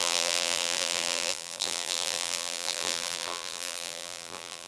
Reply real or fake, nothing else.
fake